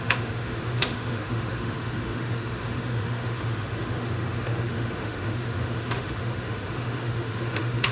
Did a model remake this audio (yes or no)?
yes